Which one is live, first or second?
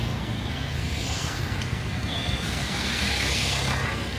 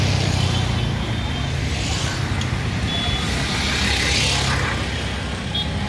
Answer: second